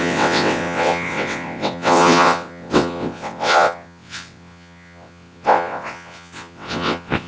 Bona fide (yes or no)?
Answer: no